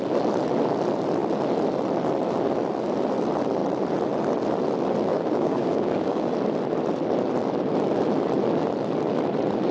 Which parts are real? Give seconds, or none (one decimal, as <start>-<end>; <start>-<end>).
0.0-5.1; 6.3-9.7